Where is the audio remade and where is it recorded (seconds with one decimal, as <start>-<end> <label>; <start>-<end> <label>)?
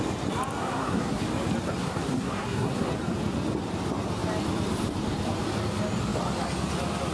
0.0-0.6 recorded; 0.6-1.2 remade; 1.2-1.8 recorded; 1.8-2.9 remade; 2.9-7.1 recorded